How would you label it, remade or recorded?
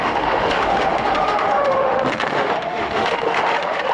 remade